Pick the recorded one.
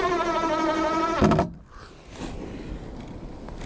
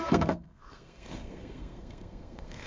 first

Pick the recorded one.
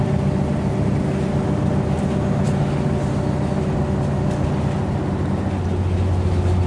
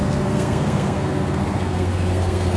first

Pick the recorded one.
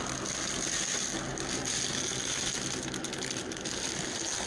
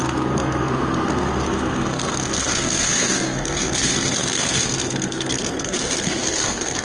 first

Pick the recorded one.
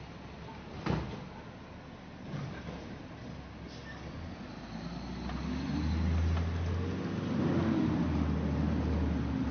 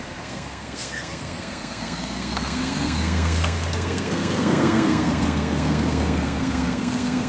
first